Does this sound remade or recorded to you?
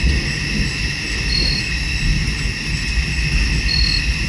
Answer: recorded